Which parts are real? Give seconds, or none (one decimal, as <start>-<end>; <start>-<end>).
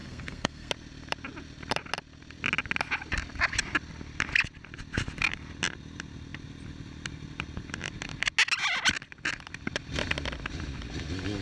0.7-11.4